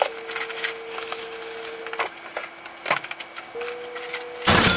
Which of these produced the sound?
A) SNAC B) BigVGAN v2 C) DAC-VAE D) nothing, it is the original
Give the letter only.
D